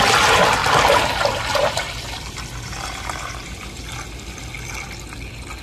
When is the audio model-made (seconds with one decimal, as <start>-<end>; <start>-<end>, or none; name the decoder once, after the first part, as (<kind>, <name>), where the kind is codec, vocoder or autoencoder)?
0.6-3.9 (vocoder, BigVGAN v2)